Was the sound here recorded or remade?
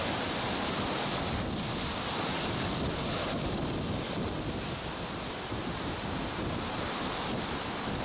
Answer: recorded